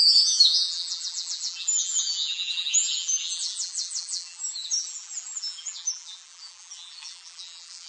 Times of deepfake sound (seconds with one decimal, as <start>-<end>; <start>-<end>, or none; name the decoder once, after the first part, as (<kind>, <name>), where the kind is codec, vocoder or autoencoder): 0.0-7.9 (vocoder, BigVGAN v2)